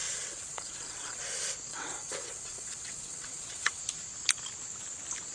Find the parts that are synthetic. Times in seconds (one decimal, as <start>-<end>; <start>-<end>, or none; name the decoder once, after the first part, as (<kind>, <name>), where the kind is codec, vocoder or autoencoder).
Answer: 0.0-1.2 (vocoder, WaveNeXt); 1.7-3.8